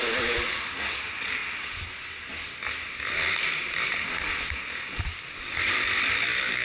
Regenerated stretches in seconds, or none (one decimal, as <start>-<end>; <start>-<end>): 0.0-1.4; 5.4-6.6